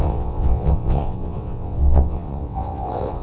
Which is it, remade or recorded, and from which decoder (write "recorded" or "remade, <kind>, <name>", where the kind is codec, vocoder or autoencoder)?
remade, vocoder, WaveNeXt